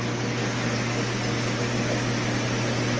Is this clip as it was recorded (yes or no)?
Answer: yes